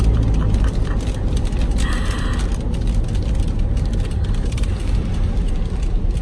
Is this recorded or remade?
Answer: recorded